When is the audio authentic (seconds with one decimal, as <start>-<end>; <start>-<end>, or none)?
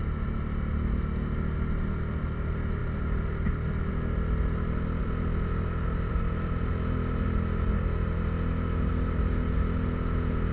0.0-5.0; 6.1-10.5